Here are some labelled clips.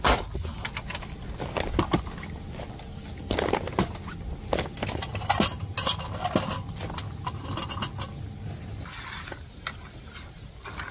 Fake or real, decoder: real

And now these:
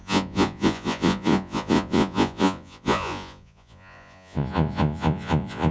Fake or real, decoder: fake, vocoder, Vocos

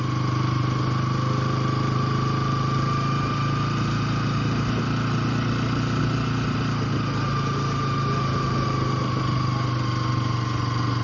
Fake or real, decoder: real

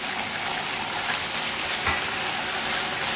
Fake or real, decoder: real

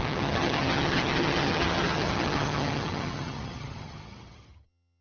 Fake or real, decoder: fake, vocoder, HiFi-GAN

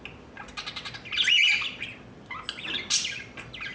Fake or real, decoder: real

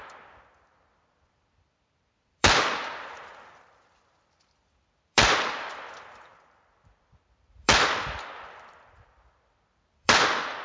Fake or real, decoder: fake, vocoder, BigVGAN v2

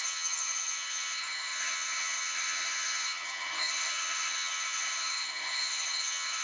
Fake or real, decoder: fake, vocoder, HiFi-GAN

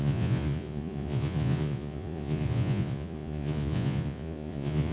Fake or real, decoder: fake, vocoder, Vocos